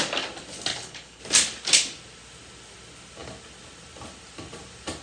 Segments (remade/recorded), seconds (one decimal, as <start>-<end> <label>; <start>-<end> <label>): 0.0-0.7 recorded; 0.7-1.2 remade; 1.2-5.0 recorded